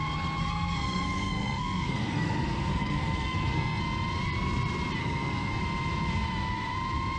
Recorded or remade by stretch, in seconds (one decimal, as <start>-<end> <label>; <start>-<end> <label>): 0.0-0.4 recorded; 0.4-3.8 remade; 3.8-5.0 recorded; 5.0-5.6 remade; 5.6-7.2 recorded